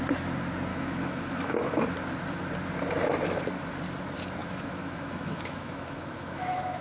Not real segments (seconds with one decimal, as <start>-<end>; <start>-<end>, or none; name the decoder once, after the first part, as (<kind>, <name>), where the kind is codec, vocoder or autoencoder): 0.7-1.8 (autoencoder, DAC-VAE); 4.4-6.8